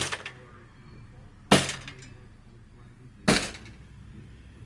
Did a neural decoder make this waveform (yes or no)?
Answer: no